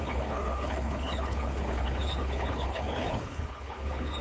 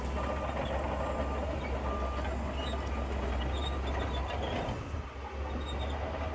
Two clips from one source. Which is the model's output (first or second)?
first